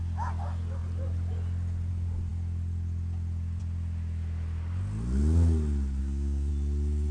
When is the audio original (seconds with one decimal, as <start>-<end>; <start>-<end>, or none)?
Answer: 0.0-6.0; 6.5-7.1